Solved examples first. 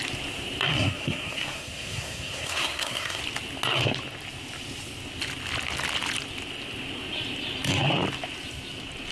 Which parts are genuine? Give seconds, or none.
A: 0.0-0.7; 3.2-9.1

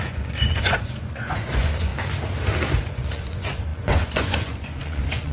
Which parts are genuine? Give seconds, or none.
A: 1.9-2.8

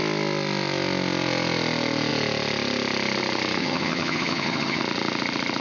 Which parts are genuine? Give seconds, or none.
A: 0.0-3.6; 4.8-5.6

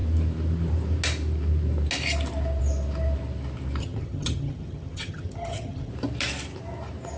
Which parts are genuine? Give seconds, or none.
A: 0.0-3.8; 5.9-7.2

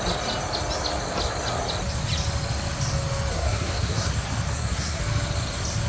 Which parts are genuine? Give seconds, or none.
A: 0.0-3.3; 4.1-4.5; 5.0-5.9

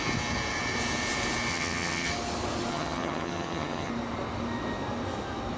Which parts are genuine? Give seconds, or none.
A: 0.0-1.5; 2.1-2.7; 3.9-5.6

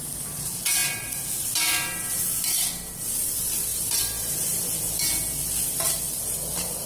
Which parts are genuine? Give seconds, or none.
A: 0.0-3.7; 4.8-6.9